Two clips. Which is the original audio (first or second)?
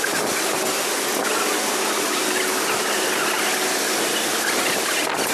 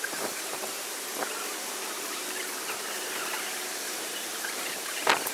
first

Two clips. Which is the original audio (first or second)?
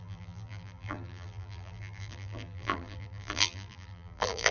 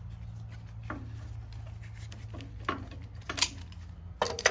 second